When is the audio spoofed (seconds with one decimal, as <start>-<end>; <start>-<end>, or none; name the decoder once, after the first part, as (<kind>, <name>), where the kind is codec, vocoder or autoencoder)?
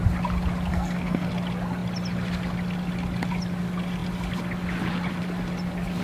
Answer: 0.7-1.3 (codec, SNAC)